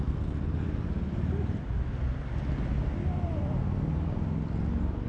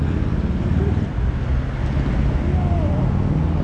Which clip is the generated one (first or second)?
first